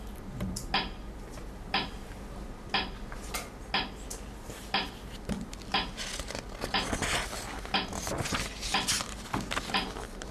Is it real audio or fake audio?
real